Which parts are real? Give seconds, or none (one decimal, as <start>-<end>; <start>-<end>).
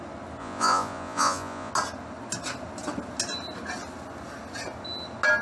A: 0.0-0.4; 1.7-5.4